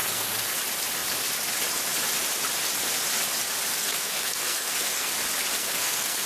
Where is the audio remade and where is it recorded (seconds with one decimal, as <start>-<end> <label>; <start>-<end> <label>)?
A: 0.0-0.6 remade; 0.6-3.7 recorded; 3.7-5.1 remade; 5.1-5.5 recorded; 5.5-6.3 remade